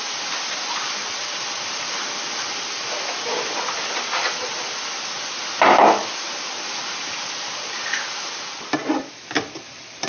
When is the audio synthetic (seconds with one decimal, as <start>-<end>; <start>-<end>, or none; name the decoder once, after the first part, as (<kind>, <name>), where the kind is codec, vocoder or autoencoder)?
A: none